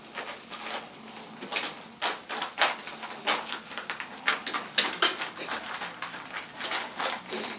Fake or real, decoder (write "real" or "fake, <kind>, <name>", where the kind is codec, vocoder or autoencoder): real